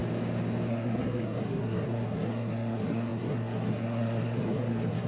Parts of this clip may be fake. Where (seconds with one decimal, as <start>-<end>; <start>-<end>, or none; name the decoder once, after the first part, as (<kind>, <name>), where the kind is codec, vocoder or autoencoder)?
0.7-5.1 (codec, SNAC)